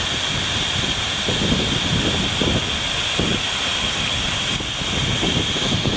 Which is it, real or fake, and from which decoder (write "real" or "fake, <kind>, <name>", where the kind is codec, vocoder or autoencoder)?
real